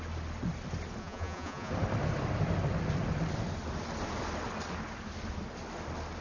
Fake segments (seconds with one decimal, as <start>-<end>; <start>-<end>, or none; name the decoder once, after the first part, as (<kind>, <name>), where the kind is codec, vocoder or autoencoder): 1.0-1.7 (vocoder, Vocos)